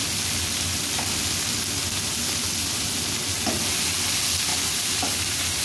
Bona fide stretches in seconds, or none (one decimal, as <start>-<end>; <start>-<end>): 0.0-5.6